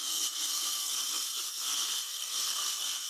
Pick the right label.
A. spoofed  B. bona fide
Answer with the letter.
A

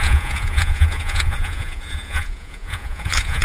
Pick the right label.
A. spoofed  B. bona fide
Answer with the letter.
A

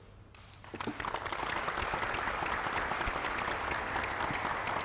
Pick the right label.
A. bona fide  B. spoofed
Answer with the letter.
A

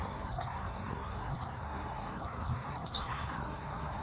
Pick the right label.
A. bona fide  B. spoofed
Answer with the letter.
B